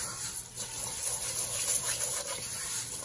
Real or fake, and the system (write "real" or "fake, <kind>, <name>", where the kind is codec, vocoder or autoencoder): real